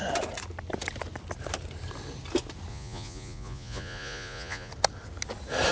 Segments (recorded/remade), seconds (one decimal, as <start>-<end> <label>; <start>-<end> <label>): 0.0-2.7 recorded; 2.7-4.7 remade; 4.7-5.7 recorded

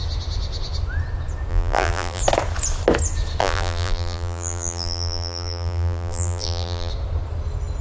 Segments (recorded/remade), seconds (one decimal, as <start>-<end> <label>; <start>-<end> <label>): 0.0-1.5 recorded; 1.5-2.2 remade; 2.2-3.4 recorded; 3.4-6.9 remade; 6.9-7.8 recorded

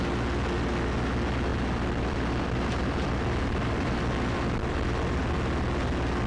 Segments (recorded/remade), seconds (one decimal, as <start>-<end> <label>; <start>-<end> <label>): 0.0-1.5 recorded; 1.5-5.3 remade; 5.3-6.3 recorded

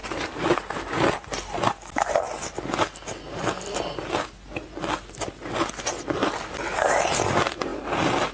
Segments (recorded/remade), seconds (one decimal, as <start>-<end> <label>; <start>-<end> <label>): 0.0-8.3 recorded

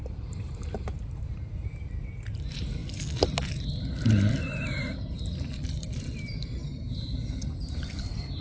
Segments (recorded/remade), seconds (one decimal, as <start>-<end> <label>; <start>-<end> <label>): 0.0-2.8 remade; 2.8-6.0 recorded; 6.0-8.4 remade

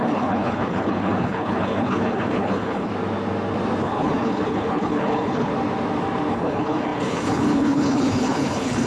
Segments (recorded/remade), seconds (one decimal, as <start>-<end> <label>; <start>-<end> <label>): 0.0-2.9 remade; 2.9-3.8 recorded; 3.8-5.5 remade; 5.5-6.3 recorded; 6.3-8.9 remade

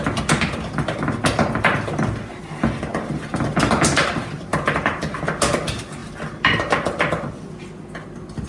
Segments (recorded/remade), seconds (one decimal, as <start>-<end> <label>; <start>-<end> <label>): 0.0-8.5 recorded

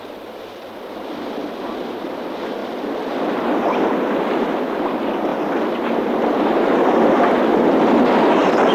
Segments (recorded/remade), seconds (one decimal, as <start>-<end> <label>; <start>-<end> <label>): 0.0-2.6 recorded; 2.6-3.7 remade; 3.7-5.3 recorded; 5.3-8.0 remade; 8.0-8.7 recorded